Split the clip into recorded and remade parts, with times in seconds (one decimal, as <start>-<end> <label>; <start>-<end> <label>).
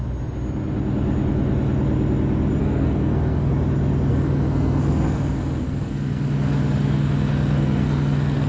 0.0-2.6 recorded; 2.6-3.5 remade; 3.5-4.1 recorded; 4.1-8.5 remade